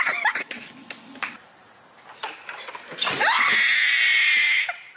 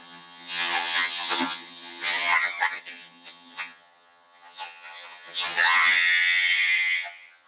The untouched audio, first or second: first